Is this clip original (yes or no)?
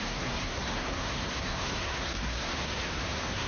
no